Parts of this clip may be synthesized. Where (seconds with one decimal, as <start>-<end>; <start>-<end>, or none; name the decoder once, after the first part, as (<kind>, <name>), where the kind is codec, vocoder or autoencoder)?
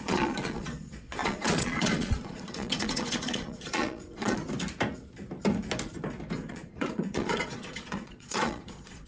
0.0-4.4 (vocoder, Vocos); 6.5-9.1